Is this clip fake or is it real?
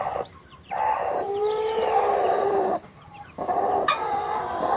fake